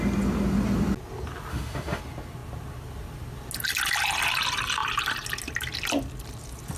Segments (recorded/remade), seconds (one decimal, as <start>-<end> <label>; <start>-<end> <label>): 0.0-1.5 recorded; 1.5-2.0 remade; 2.0-6.8 recorded